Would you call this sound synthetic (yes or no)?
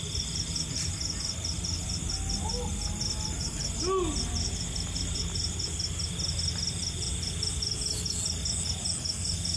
no